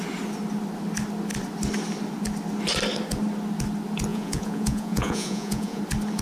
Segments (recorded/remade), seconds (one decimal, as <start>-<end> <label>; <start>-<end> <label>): 0.0-4.1 recorded; 4.1-5.8 remade; 5.8-6.2 recorded